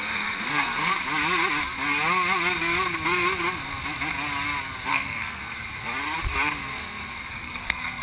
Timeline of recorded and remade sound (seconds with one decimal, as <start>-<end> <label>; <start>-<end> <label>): 0.0-0.9 remade; 0.9-4.9 recorded; 4.9-5.4 remade; 5.4-7.3 recorded; 7.3-8.0 remade